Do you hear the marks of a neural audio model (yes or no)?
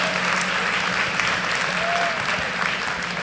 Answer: no